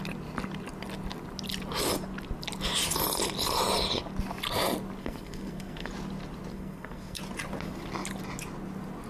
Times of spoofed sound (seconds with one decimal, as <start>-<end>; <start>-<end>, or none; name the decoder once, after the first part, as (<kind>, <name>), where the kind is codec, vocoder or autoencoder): 5.0-5.9 (codec, SNAC); 6.5-7.2